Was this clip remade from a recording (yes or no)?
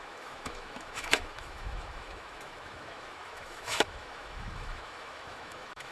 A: yes